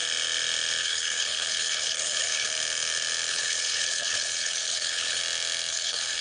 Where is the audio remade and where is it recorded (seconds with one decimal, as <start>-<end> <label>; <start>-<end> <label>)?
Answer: 0.0-0.8 recorded; 0.8-2.5 remade; 2.5-3.3 recorded; 3.3-5.2 remade; 5.2-5.7 recorded; 5.7-6.2 remade